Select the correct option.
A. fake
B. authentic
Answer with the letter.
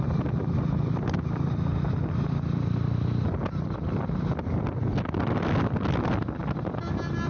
B